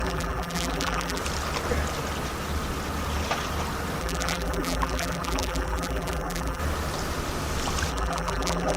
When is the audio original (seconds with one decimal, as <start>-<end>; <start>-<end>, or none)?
1.2-4.0; 6.6-7.9